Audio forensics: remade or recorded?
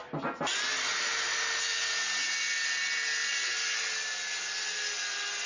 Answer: recorded